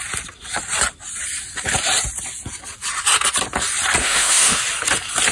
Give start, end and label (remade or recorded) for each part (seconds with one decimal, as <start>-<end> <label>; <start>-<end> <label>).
0.0-4.0 recorded; 4.0-4.6 remade; 4.6-5.3 recorded